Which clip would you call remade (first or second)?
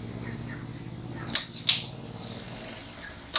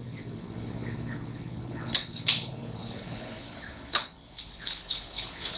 second